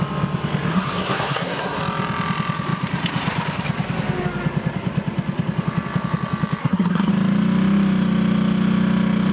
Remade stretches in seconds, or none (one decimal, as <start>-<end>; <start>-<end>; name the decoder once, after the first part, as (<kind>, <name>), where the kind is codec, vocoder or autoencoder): 0.7-1.8 (codec, SNAC); 6.6-7.1